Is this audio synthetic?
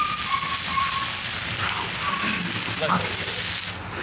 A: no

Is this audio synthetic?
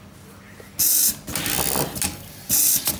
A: no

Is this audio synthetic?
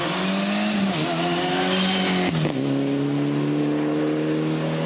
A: no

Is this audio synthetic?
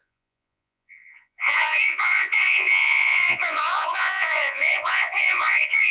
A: yes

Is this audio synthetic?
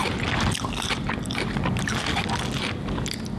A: no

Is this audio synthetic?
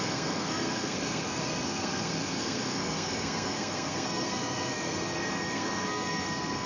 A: yes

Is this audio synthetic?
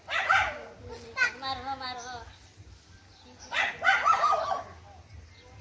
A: no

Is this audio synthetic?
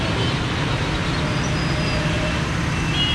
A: no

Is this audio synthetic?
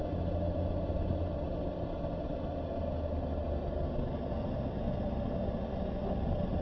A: no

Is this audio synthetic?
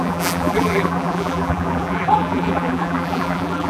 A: yes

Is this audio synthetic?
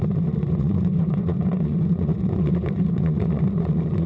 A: yes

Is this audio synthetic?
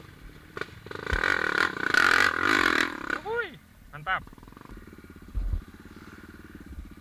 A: no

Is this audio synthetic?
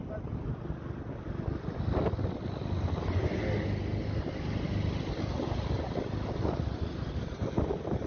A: no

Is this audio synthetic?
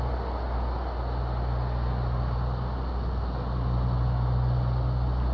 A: no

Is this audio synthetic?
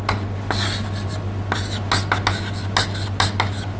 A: no